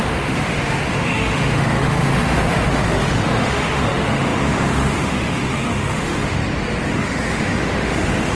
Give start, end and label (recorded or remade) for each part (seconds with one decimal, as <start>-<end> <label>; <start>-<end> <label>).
0.0-6.4 remade; 6.4-6.9 recorded; 6.9-8.3 remade